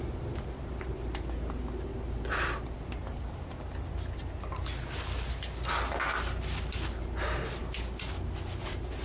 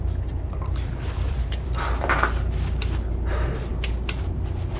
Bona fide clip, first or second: first